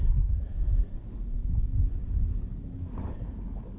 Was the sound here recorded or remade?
recorded